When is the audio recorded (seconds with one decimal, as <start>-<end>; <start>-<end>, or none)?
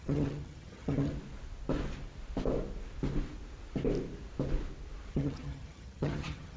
1.1-5.1